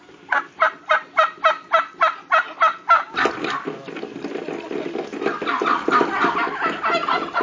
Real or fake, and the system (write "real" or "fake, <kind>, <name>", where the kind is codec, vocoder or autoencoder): real